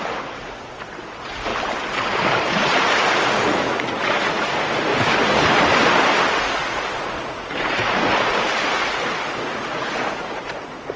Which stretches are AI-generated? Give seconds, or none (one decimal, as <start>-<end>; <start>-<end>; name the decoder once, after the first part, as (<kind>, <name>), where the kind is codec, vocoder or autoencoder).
0.0-1.5 (vocoder, Vocos); 2.5-4.9; 6.3-11.0